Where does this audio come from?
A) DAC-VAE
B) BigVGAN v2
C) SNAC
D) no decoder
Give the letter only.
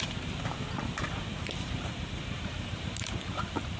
B